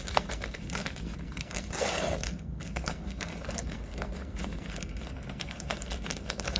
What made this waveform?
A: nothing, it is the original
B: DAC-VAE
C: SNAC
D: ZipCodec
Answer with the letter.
C